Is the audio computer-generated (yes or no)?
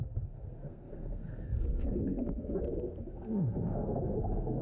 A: yes